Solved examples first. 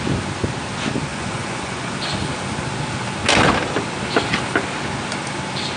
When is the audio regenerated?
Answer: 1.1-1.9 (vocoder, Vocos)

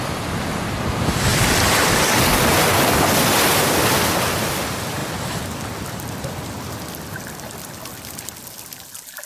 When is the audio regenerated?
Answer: none

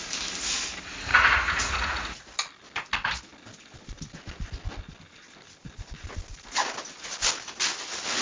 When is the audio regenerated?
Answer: 1.1-2.3 (vocoder, Vocos)

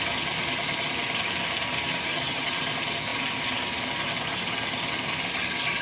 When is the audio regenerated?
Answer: 2.1-2.6 (vocoder, HiFi-GAN)